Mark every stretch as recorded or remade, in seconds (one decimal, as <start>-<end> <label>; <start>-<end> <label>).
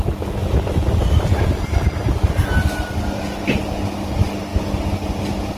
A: 0.0-5.6 recorded